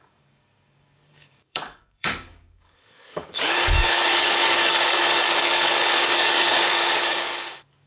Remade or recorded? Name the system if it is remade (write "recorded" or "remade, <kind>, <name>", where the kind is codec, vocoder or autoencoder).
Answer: remade, codec, DAC